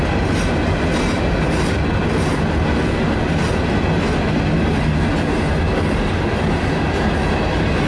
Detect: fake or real real